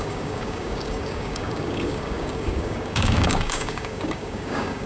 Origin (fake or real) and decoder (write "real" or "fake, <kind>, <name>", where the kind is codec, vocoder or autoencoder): fake, codec, DAC